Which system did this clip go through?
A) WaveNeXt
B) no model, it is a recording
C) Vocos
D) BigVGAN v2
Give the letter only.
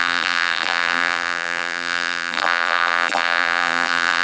D